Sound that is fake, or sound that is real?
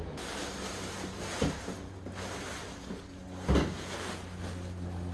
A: real